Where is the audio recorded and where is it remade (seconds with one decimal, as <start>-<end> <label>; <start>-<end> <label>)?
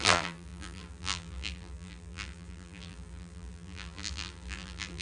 0.0-5.0 remade